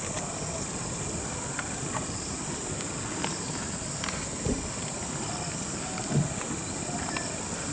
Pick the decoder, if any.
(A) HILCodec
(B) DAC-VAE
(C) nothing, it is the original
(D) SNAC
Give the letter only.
C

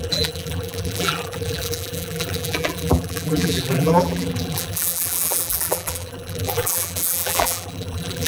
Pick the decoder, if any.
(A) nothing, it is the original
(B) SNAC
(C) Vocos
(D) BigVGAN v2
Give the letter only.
D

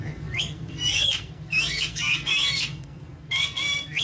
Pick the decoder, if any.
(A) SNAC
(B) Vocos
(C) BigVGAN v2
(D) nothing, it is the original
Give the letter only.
A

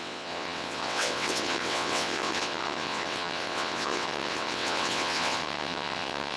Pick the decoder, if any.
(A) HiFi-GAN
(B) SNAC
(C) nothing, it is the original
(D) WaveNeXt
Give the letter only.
D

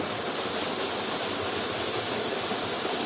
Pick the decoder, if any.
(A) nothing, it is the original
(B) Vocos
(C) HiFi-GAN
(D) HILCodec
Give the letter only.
A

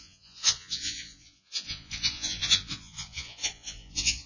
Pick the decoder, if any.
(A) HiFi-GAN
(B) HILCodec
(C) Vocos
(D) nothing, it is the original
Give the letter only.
C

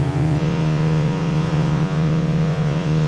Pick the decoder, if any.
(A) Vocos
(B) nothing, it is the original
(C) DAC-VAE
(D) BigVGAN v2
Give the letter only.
A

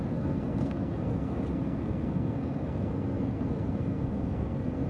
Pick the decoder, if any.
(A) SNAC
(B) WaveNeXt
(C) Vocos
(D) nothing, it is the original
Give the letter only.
A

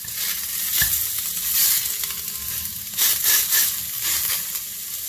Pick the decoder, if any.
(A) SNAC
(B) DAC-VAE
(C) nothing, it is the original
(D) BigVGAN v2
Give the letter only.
C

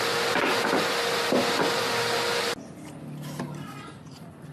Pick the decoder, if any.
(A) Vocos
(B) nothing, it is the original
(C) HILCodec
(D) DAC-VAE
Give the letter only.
B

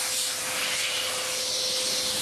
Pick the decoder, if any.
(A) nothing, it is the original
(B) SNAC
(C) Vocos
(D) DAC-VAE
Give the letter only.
A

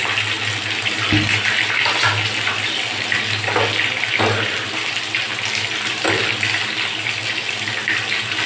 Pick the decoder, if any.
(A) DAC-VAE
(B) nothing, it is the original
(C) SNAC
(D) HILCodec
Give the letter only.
B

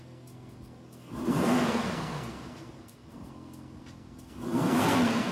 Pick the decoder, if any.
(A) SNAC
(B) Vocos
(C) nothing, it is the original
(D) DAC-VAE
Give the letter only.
A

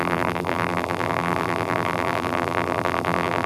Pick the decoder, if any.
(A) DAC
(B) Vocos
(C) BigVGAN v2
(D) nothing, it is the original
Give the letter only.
C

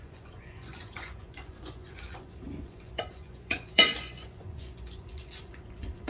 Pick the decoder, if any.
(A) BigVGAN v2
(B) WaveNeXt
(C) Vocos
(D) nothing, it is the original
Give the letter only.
C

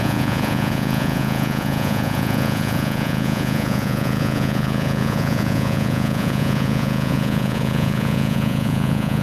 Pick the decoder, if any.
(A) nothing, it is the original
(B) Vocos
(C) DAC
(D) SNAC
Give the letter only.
B